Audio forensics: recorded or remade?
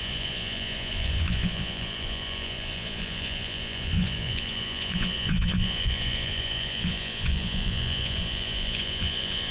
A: remade